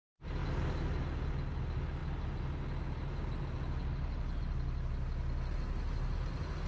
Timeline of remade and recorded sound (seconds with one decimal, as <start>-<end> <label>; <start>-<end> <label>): 0.0-6.7 recorded